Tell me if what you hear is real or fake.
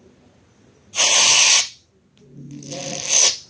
real